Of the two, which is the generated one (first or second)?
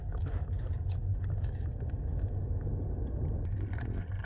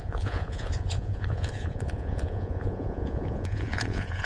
second